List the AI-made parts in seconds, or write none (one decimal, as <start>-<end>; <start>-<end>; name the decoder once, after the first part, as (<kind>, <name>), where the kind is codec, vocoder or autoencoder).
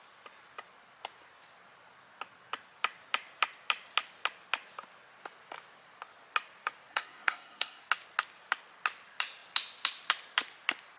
6.9-7.8 (codec, SNAC)